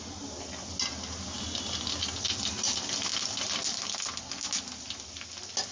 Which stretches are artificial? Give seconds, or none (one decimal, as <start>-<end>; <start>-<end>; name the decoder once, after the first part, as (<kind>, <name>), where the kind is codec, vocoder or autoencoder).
none